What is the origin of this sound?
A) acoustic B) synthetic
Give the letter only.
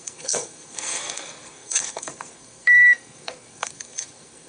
B